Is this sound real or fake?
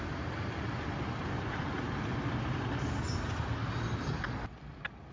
real